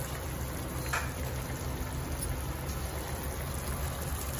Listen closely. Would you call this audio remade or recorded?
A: recorded